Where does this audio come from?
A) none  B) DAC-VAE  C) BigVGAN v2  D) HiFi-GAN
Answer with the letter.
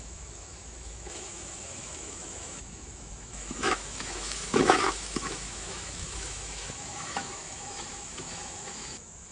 B